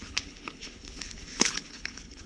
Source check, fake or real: fake